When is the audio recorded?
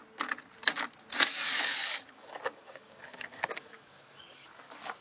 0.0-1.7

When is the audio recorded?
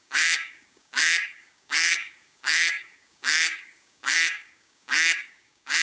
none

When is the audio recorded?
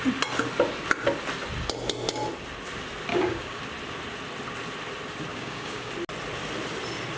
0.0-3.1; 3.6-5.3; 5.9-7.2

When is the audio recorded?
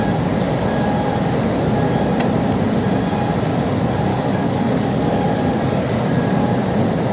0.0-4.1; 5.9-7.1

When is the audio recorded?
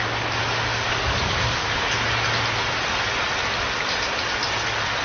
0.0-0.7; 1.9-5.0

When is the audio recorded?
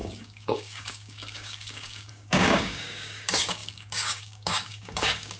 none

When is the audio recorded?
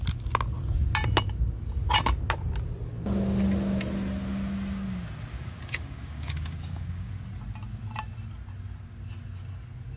0.0-5.3; 7.1-10.0